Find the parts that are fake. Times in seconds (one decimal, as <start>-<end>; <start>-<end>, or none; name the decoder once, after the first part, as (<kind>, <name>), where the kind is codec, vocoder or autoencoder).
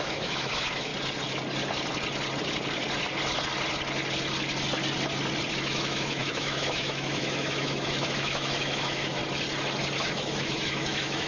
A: 0.0-0.9 (autoencoder, DAC-VAE); 5.5-9.2; 10.1-11.3